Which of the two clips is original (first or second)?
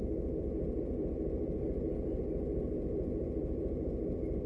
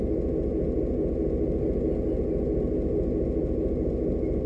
second